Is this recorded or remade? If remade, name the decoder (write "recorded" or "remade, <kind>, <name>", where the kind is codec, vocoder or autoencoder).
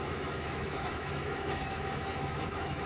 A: remade, autoencoder, DAC-VAE